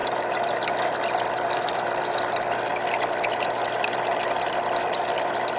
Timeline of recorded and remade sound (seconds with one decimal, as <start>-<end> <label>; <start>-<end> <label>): 0.0-5.6 recorded